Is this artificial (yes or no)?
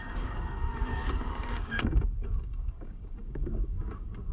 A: yes